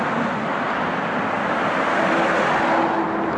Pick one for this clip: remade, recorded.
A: recorded